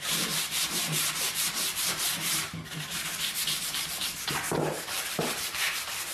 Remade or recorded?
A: remade